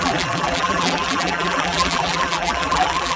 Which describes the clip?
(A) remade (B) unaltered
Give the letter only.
A